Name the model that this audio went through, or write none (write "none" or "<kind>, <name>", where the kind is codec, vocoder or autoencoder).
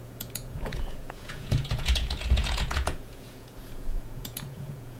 vocoder, Vocos